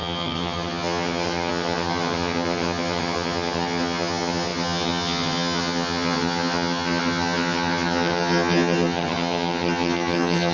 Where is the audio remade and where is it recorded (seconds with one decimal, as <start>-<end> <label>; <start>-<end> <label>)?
0.0-10.5 remade